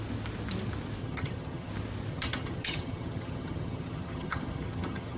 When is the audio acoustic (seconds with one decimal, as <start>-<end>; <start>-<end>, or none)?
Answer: 0.0-1.0; 1.7-2.1